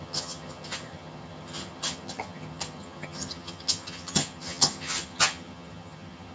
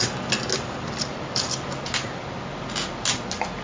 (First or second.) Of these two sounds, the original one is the second